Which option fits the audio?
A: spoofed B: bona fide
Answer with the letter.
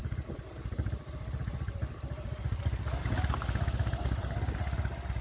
B